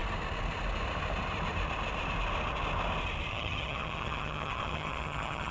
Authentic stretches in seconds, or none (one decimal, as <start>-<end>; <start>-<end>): 0.0-3.3